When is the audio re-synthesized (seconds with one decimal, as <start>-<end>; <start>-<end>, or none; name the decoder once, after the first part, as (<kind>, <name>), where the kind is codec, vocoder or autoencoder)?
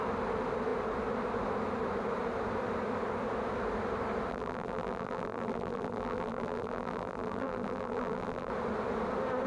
4.3-8.5 (vocoder, BigVGAN v2)